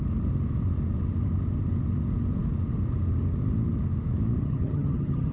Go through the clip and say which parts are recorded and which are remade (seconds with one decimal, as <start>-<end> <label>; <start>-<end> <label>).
0.0-4.4 recorded; 4.4-5.3 remade